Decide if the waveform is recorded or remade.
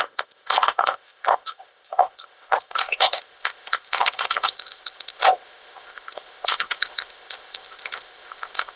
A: remade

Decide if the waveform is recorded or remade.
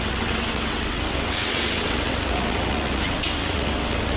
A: remade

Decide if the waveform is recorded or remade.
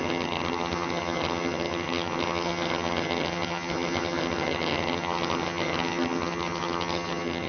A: remade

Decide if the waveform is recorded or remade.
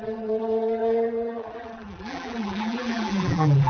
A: remade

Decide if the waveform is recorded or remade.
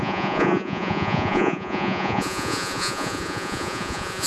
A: remade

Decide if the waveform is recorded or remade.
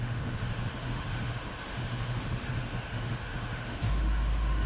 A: remade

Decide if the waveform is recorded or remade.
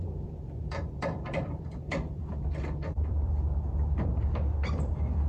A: remade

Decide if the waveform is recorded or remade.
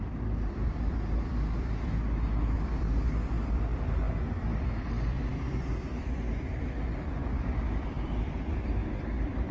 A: remade